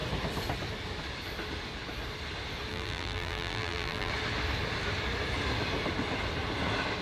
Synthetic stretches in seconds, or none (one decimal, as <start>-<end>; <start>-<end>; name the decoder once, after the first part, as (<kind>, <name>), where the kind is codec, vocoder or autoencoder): 2.7-4.1 (vocoder, BigVGAN v2)